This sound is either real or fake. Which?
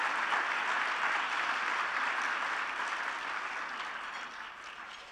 real